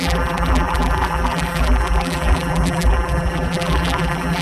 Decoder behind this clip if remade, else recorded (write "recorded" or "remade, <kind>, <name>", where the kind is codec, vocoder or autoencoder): remade, vocoder, BigVGAN v2